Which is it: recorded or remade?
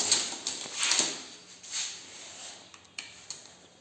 recorded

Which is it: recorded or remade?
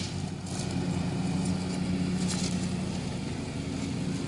recorded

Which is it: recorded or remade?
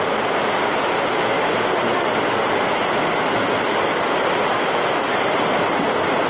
recorded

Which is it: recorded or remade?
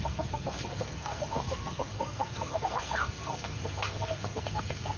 remade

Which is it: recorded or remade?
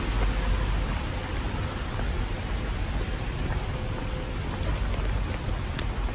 recorded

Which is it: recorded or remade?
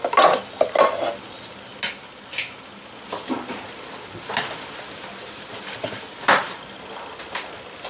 recorded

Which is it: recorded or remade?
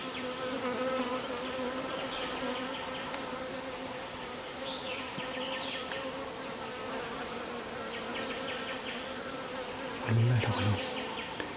recorded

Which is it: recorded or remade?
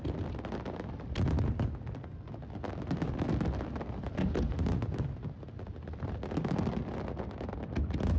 recorded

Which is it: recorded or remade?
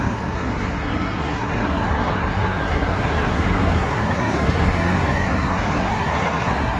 remade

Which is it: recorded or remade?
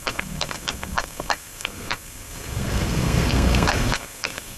remade